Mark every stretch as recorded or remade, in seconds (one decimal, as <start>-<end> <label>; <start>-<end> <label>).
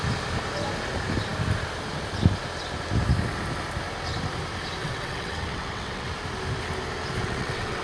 0.0-4.8 recorded; 4.8-6.1 remade; 6.1-7.2 recorded; 7.2-7.8 remade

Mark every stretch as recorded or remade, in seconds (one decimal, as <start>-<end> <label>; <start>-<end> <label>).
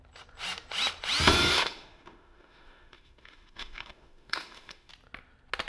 0.0-1.5 recorded; 1.5-4.9 remade; 4.9-5.7 recorded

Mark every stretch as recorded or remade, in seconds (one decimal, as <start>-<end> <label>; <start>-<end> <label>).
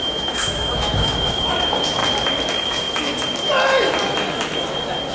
0.0-2.0 remade; 2.0-2.5 recorded; 2.5-3.1 remade; 3.1-5.1 recorded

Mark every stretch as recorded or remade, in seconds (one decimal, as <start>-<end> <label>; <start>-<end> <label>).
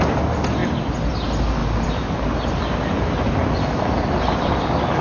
0.0-5.0 recorded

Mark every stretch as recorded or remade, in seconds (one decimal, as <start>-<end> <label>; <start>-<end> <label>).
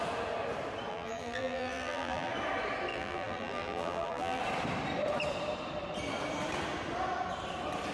0.0-0.9 recorded; 0.9-2.3 remade; 2.3-2.9 recorded; 2.9-4.4 remade; 4.4-7.9 recorded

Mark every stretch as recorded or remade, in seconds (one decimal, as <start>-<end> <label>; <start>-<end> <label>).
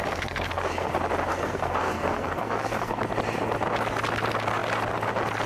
0.0-0.9 remade; 0.9-1.3 recorded; 1.3-3.0 remade; 3.0-5.5 recorded